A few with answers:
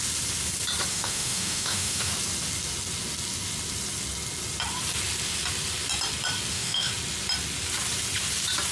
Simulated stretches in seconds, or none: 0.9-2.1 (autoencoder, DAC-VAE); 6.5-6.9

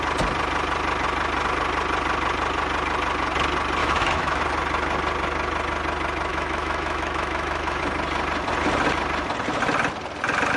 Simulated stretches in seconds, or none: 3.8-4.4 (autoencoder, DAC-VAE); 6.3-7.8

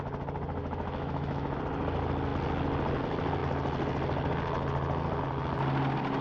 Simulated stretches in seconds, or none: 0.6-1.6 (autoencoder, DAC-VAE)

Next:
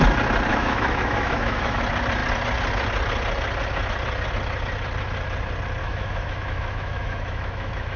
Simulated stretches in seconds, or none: 0.5-1.8 (autoencoder, DAC-VAE); 5.8-8.0